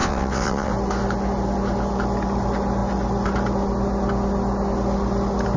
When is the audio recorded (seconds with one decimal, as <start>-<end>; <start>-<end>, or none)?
0.7-5.6